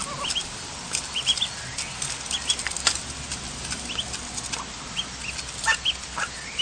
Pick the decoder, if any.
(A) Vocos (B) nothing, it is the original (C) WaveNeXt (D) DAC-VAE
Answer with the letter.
B